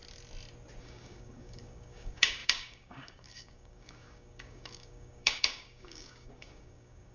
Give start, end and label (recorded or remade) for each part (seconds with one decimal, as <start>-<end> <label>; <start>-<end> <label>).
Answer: 0.0-0.8 recorded; 0.8-7.1 remade